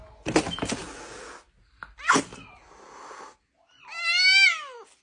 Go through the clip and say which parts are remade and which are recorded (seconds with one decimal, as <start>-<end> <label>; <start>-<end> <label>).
0.0-5.0 recorded